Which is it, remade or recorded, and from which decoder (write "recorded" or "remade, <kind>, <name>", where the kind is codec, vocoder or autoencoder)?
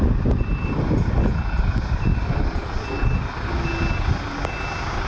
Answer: recorded